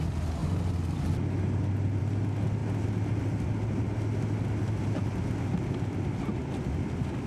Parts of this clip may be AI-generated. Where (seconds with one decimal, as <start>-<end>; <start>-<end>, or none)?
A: none